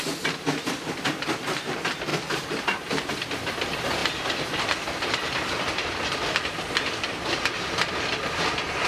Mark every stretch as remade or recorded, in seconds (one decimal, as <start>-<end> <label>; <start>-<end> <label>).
0.0-2.1 recorded; 2.1-3.5 remade; 3.5-4.0 recorded; 4.0-6.7 remade; 6.7-8.9 recorded